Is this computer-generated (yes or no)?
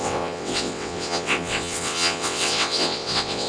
yes